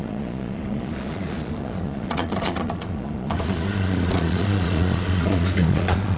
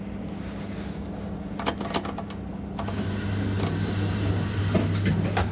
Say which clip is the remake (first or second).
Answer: first